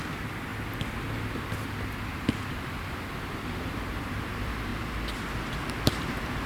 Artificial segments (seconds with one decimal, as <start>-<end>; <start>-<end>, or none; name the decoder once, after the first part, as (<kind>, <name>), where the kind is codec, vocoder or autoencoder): 0.0-0.5 (vocoder, BigVGAN v2); 3.6-4.7; 5.8-6.5